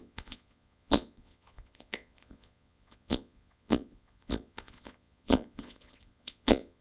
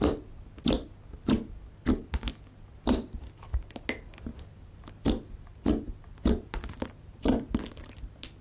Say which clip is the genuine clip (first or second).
second